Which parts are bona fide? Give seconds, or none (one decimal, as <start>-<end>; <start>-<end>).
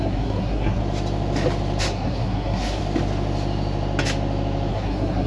0.8-1.8; 2.8-4.7